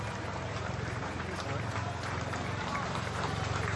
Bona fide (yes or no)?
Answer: no